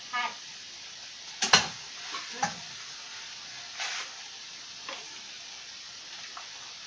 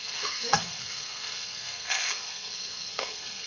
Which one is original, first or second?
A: first